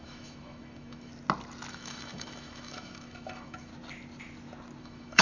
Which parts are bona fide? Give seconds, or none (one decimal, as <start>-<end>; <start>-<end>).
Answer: 1.1-1.7; 3.7-4.8